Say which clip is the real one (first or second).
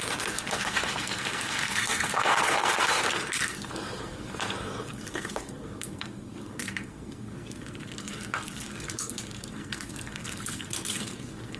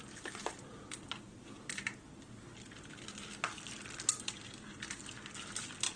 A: second